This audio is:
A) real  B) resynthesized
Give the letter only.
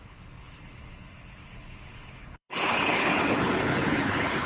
B